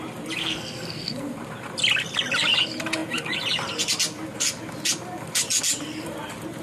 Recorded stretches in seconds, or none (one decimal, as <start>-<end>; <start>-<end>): 0.0-0.4; 1.3-6.6